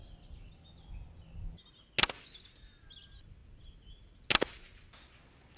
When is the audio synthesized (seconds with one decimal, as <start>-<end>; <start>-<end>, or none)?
none